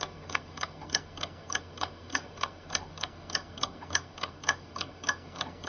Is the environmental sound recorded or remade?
remade